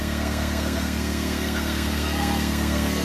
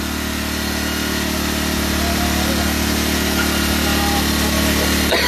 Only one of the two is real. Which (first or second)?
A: second